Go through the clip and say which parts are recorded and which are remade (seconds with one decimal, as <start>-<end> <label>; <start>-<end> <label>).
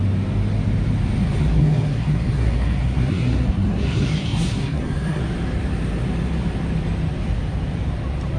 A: 0.0-1.2 recorded; 1.2-5.2 remade; 5.2-8.4 recorded